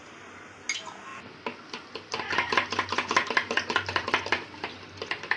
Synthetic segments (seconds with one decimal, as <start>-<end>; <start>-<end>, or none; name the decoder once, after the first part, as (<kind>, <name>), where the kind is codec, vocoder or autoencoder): none